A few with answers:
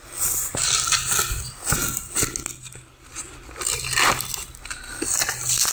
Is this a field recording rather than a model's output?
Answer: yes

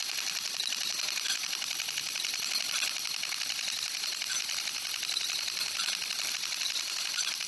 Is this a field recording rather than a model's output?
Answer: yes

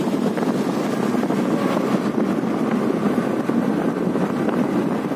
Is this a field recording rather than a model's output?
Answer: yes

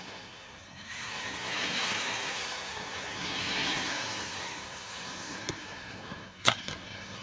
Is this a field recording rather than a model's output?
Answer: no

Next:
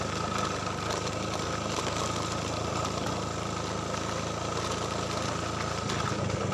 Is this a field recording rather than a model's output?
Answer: yes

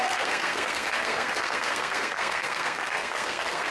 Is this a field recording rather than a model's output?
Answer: no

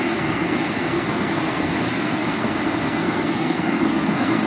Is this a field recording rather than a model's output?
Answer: no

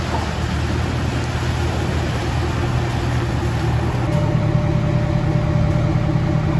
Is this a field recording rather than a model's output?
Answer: yes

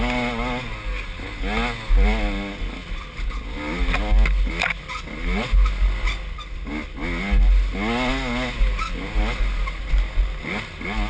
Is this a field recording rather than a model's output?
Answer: yes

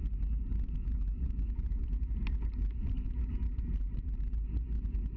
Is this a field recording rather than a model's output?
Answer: yes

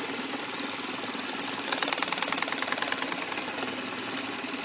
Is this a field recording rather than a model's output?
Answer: yes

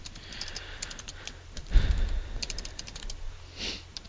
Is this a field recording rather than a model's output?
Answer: yes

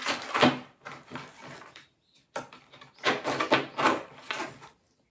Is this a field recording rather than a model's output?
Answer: yes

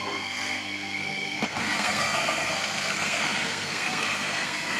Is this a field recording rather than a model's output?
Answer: no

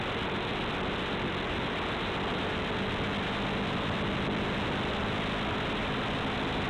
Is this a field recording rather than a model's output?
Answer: yes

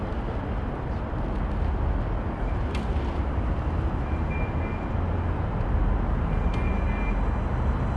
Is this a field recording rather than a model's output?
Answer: yes